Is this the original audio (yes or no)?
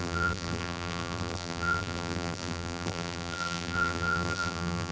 no